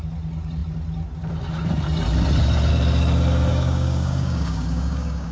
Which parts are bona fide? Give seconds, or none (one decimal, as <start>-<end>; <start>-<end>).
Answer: 0.0-3.5